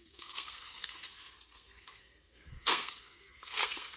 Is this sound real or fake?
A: fake